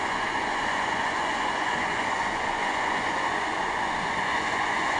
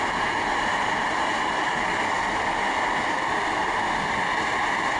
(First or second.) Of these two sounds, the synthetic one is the first